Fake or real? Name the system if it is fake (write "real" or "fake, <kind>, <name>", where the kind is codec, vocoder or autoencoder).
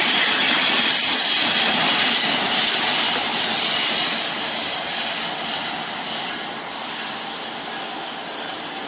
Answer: real